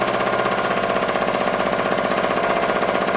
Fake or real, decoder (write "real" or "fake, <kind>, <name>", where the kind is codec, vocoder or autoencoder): real